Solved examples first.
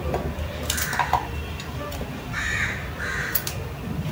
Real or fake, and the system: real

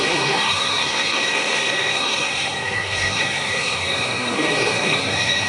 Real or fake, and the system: fake, codec, SNAC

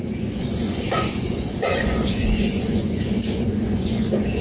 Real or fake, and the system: fake, vocoder, Vocos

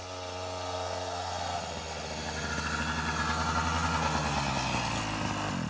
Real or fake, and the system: real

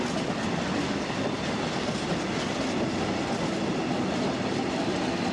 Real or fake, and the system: real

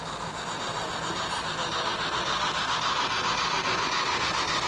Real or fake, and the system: real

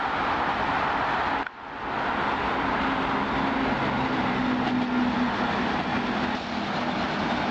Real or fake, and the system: real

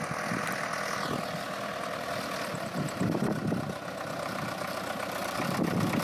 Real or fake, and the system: real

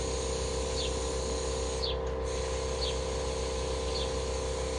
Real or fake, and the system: real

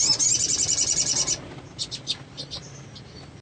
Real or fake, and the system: real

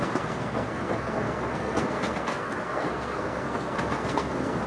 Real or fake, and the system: fake, codec, SNAC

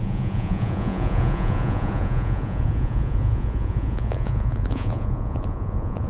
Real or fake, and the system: fake, vocoder, Vocos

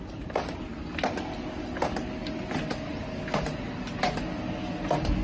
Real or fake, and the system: real